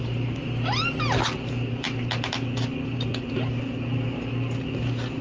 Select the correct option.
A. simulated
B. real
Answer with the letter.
B